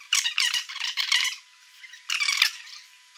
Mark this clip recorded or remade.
remade